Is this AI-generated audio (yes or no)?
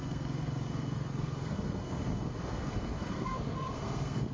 yes